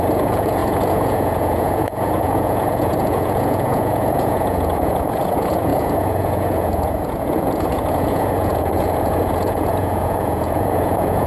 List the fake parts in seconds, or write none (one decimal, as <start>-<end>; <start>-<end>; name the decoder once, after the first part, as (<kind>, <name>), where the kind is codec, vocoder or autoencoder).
0.0-11.3 (vocoder, Vocos)